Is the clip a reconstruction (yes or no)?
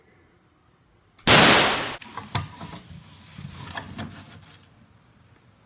no